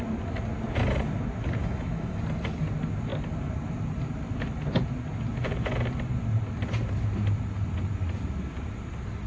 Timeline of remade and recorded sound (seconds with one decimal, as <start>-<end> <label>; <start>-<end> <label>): 0.0-1.6 recorded; 1.6-2.2 remade; 2.2-9.3 recorded